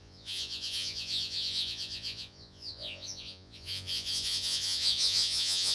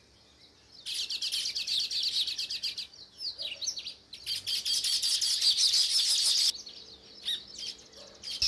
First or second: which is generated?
first